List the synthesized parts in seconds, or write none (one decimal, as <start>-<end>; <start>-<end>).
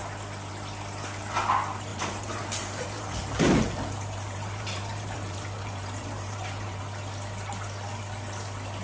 1.9-6.8